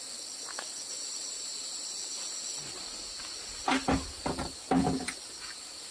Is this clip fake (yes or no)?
no